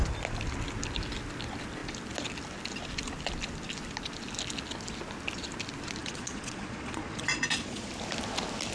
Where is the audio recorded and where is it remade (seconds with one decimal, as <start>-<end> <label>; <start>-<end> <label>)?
0.0-6.0 recorded; 6.0-7.9 remade; 7.9-8.7 recorded